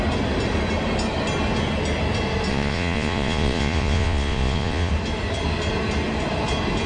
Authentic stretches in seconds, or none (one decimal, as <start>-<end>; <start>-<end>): 0.0-2.5; 4.9-6.9